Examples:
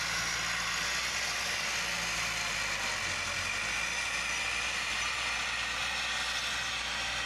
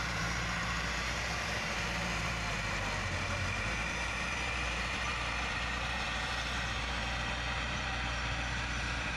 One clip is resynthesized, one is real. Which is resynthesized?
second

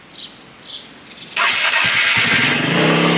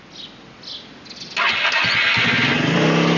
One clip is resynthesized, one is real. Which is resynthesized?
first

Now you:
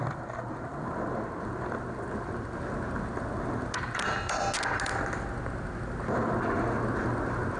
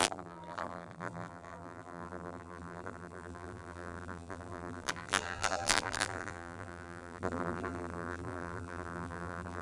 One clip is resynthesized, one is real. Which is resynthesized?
second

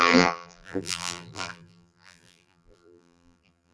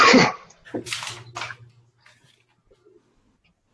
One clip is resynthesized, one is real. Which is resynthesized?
first